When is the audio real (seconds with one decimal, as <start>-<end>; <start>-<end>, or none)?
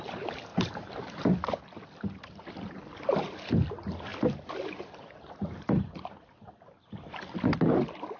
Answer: 0.0-8.2